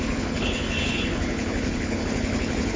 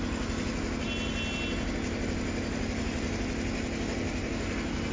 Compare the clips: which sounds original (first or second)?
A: second